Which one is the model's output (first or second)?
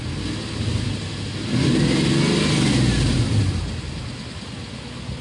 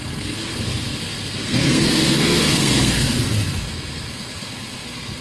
second